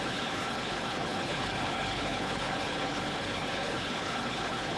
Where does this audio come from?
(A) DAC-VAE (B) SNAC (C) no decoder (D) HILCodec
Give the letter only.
D